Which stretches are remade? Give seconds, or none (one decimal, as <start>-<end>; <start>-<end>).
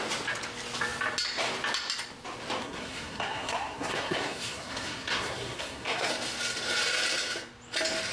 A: 2.6-6.1